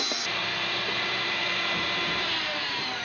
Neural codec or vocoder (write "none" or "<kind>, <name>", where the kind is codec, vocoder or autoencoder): vocoder, BigVGAN v2